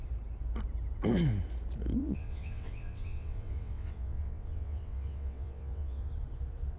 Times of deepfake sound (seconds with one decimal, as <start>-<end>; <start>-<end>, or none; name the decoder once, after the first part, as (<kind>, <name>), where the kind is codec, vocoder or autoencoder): 2.0-6.1 (vocoder, WaveNeXt)